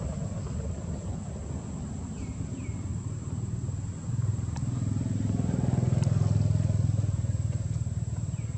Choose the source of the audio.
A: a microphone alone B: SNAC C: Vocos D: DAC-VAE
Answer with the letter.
A